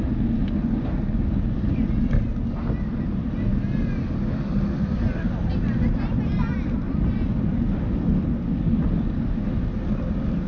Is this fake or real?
real